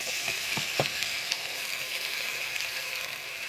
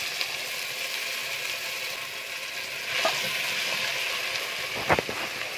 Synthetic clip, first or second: first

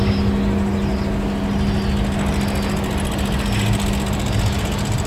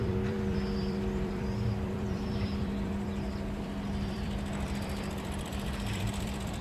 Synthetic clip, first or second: second